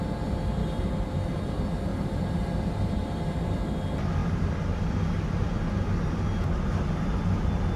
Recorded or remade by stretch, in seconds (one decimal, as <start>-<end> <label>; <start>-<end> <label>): 0.0-0.6 recorded; 0.6-1.2 remade; 1.2-1.9 recorded; 1.9-3.5 remade; 3.5-7.8 recorded